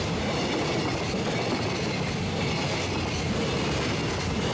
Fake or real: real